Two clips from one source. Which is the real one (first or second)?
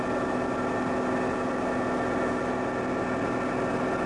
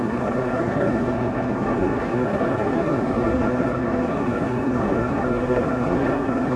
first